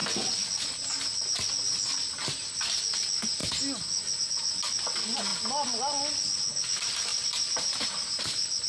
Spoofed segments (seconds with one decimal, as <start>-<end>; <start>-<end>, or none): 7.1-8.2